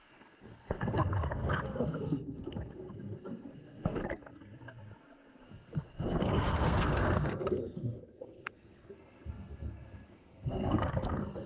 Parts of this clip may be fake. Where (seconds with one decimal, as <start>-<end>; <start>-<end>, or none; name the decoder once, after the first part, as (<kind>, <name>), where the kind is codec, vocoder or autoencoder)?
0.0-4.0 (codec, SNAC); 5.4-11.5